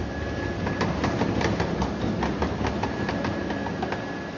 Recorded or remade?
recorded